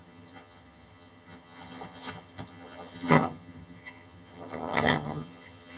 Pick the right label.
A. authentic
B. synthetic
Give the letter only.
B